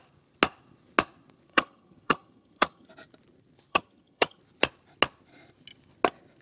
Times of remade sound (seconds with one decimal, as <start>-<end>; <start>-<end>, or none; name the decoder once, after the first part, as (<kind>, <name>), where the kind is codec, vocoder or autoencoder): 1.5-2.9 (vocoder, HiFi-GAN); 3.7-4.4